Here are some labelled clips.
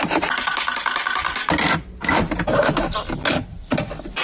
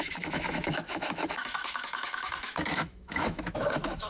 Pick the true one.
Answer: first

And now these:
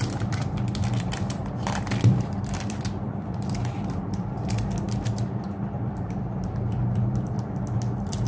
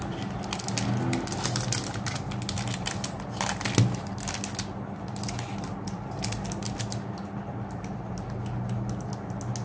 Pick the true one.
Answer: second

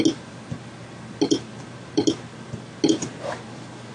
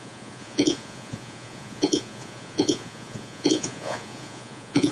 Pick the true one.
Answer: first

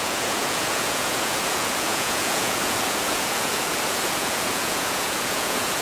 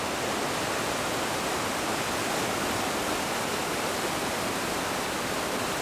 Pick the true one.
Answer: second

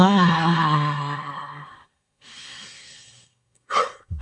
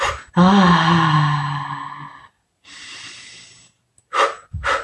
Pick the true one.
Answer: second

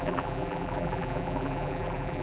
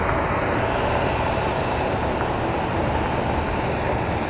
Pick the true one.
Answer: second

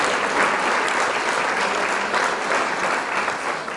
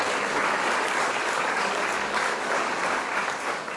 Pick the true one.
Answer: first